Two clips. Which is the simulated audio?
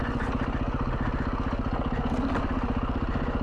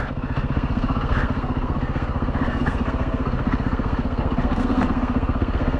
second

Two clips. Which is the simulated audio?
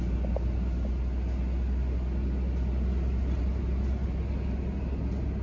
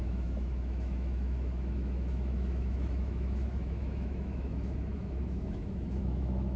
second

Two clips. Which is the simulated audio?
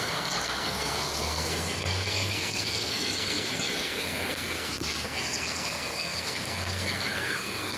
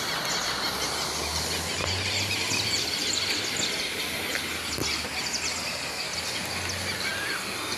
first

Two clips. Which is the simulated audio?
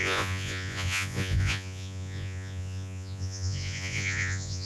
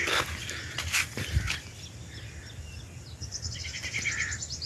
first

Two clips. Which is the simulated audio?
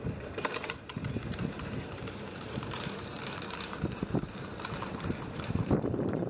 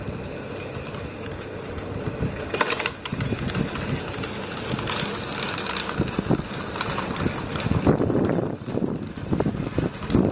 first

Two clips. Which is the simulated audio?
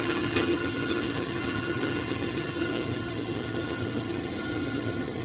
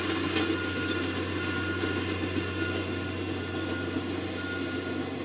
first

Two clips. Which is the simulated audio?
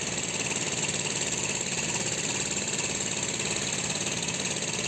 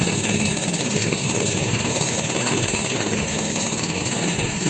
second